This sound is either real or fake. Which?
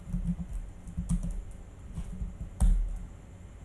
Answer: real